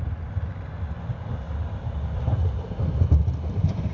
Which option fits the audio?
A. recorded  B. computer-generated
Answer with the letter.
A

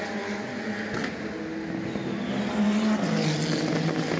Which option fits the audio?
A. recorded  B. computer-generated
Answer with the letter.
A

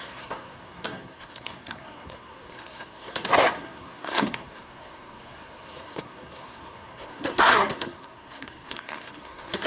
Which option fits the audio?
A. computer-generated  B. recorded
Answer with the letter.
A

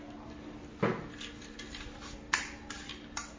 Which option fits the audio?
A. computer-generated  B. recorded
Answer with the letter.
B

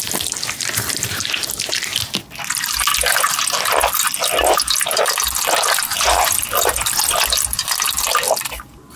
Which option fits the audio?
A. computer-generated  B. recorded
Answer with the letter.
B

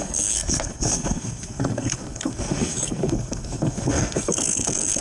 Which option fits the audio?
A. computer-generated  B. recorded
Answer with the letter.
A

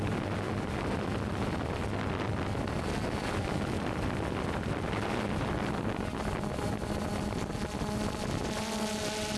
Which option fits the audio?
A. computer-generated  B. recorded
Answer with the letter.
B